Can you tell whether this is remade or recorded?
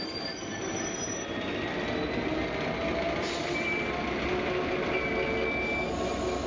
recorded